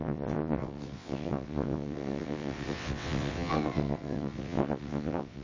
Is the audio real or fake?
fake